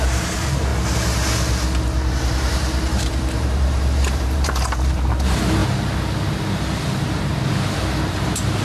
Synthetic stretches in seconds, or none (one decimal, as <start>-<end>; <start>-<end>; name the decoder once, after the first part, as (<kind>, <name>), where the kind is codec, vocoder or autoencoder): 0.0-0.7 (vocoder, BigVGAN v2); 2.1-5.6; 6.8-7.3; 8.1-8.6